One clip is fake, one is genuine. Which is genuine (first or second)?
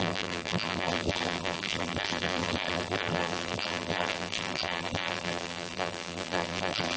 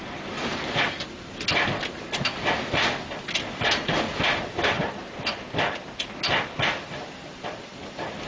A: second